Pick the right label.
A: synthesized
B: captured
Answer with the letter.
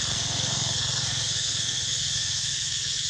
A